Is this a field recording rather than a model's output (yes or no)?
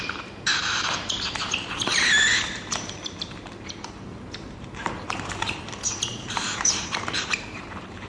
no